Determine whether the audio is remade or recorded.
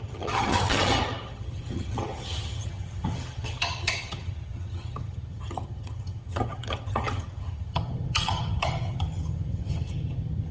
remade